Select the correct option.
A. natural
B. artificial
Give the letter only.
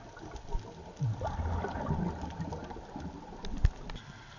A